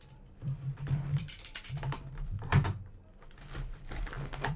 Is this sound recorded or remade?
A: remade